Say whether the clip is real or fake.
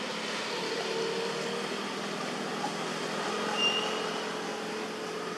real